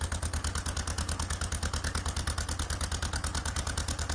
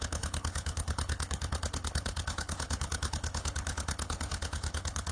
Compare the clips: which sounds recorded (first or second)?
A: first